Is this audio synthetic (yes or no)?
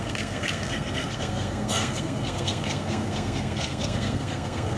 yes